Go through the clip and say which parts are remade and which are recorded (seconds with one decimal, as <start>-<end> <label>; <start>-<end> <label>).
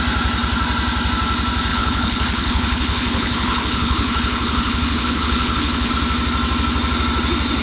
0.0-1.7 recorded; 1.7-5.9 remade; 5.9-7.6 recorded